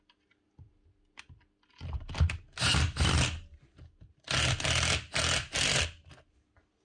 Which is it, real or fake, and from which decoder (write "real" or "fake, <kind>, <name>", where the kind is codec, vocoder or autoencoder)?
real